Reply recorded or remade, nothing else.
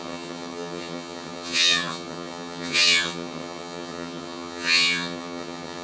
remade